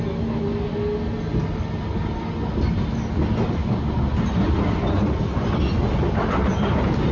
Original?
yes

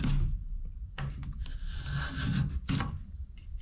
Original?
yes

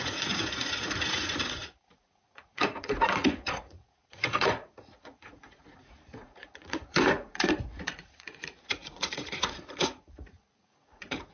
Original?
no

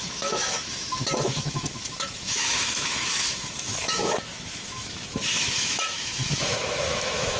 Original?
no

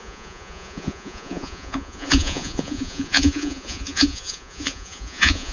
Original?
no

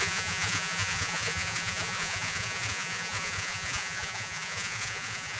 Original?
no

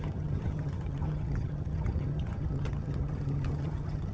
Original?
no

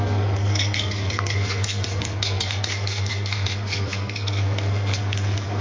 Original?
no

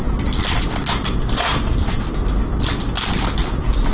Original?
yes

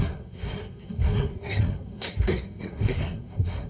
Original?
no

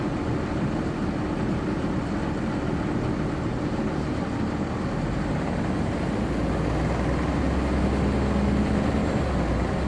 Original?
yes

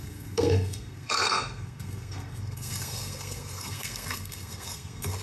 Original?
no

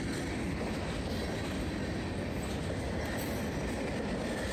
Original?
yes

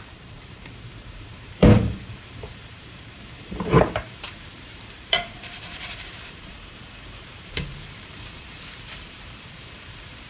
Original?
no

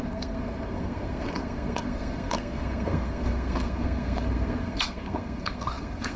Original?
no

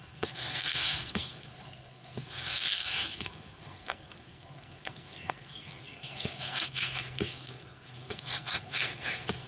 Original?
no